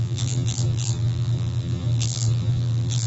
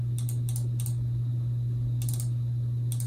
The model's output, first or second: first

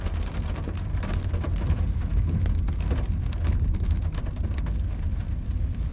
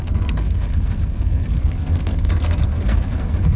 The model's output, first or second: second